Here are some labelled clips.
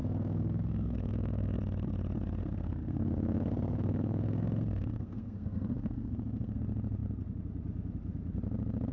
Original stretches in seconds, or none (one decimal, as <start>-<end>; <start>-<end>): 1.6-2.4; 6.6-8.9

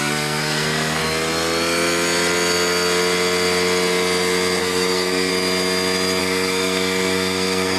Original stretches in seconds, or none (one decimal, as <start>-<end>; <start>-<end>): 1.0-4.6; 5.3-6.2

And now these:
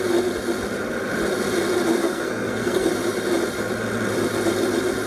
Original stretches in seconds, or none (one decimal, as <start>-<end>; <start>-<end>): 0.0-1.9; 2.9-5.1